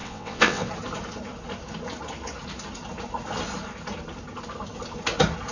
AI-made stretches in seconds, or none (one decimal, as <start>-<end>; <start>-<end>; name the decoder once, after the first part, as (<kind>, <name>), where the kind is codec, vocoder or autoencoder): 0.0-0.7 (vocoder, WaveNeXt)